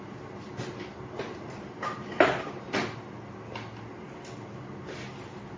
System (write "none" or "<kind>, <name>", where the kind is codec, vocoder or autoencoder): none